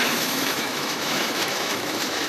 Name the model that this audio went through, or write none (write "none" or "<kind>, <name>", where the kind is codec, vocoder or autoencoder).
autoencoder, DAC-VAE